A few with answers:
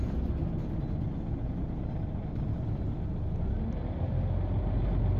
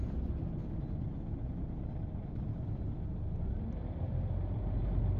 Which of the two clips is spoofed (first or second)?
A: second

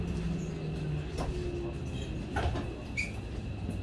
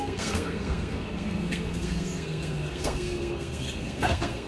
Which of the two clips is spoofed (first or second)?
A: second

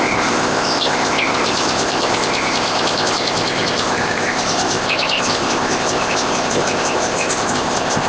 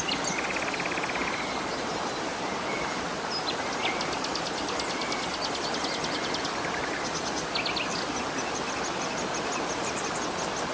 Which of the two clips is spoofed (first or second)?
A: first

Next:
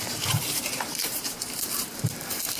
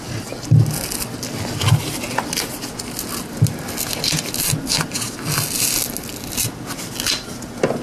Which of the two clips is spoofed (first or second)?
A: first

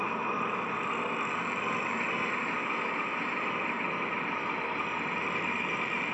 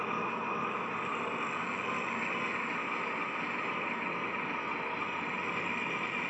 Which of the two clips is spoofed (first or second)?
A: first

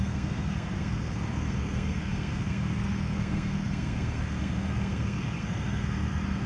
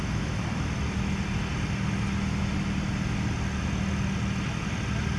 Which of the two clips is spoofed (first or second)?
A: first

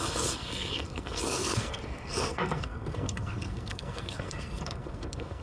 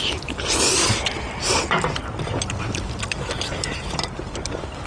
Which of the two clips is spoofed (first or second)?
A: first